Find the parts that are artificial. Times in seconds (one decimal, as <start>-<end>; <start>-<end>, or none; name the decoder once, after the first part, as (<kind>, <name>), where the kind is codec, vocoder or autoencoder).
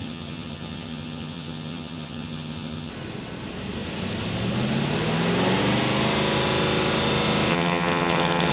0.0-2.9 (vocoder, HiFi-GAN); 7.5-8.5